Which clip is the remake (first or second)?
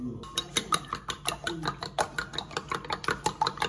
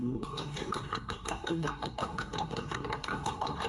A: second